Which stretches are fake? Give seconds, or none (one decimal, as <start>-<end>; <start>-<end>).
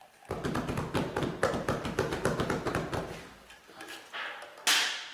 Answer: none